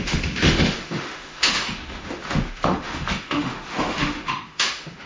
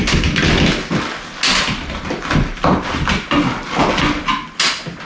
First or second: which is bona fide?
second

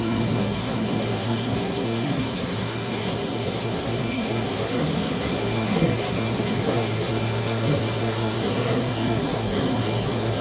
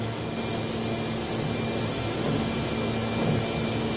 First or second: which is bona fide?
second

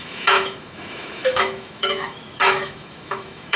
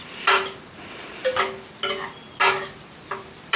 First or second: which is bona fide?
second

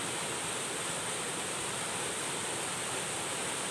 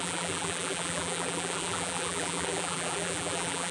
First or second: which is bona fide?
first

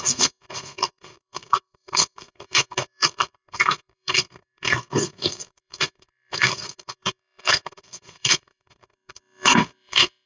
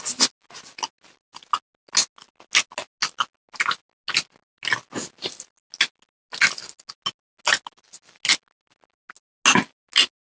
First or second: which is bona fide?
second